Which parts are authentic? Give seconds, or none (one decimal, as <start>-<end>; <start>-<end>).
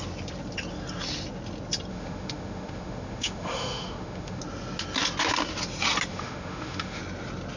0.0-1.9; 4.4-6.1; 7.0-7.6